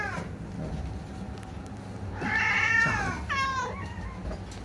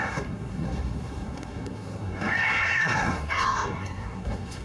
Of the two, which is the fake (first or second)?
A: second